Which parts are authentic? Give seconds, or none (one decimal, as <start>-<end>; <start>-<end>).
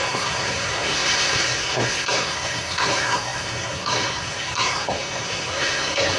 none